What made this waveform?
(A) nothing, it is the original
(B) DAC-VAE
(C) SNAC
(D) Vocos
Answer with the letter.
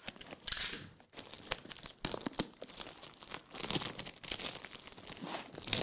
A